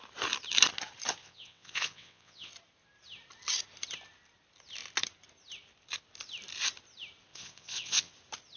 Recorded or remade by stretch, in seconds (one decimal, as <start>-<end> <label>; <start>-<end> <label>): 0.0-1.2 recorded; 1.2-2.5 remade; 2.5-7.3 recorded; 7.3-8.1 remade; 8.1-8.6 recorded